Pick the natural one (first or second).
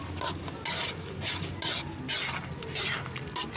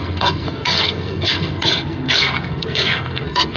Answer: first